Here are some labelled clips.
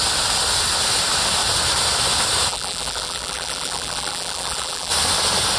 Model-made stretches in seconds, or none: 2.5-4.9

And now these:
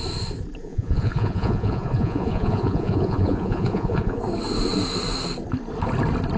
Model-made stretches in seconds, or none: 0.6-4.2

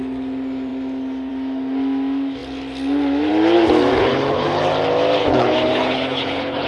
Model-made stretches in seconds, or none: 4.0-4.6; 5.2-6.7